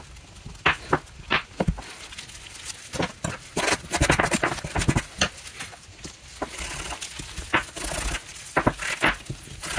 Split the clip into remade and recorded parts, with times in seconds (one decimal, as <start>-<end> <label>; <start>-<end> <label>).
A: 0.0-9.8 recorded